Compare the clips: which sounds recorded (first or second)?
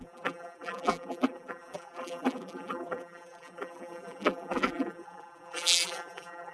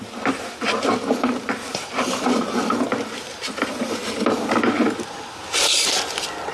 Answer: second